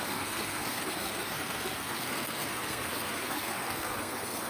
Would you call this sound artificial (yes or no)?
yes